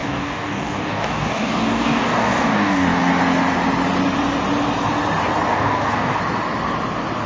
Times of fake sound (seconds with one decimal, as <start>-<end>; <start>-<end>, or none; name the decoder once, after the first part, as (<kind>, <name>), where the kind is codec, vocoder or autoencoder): 0.0-3.1 (codec, DAC); 5.5-6.2